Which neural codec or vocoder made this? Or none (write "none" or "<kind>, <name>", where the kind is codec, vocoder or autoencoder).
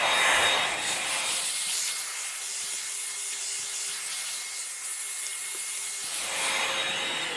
none